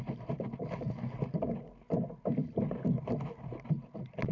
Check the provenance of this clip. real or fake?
real